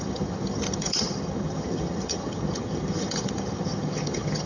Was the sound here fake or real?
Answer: fake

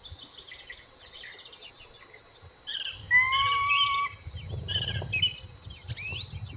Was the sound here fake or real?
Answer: real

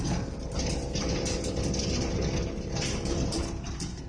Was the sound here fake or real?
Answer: real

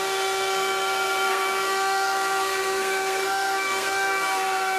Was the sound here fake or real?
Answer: fake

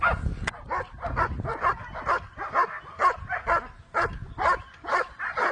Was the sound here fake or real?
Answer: real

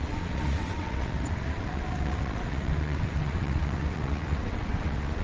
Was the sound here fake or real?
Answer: fake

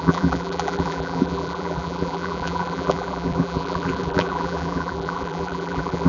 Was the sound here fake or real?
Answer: fake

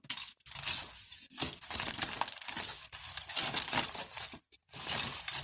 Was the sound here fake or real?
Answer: real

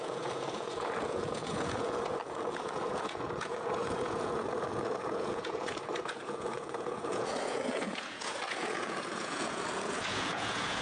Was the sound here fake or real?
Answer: fake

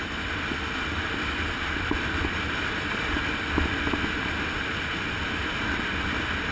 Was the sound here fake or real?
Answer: real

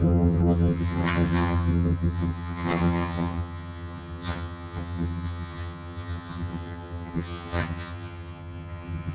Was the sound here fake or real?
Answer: fake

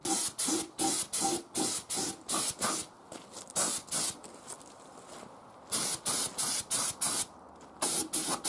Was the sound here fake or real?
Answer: real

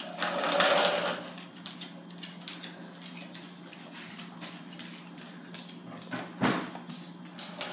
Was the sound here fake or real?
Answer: real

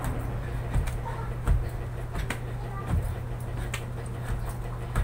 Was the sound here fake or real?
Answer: real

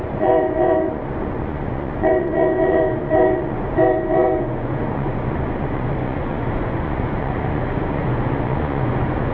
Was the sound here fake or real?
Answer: fake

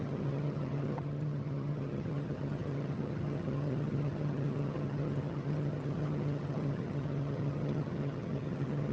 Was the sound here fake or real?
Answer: fake